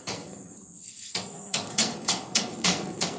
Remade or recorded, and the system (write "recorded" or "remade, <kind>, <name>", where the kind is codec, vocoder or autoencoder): remade, codec, SNAC